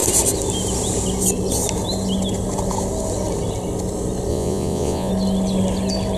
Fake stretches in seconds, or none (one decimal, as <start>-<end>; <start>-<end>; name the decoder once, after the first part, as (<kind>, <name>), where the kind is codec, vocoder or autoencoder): 4.3-5.1 (vocoder, Vocos)